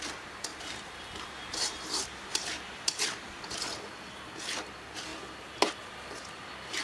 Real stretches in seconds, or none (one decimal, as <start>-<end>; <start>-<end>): 0.0-0.5; 3.1-6.8